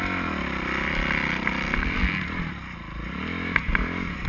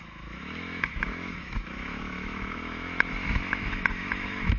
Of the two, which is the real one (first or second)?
first